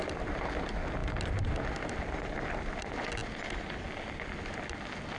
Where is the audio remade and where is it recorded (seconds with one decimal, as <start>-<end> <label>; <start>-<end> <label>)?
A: 0.0-5.2 recorded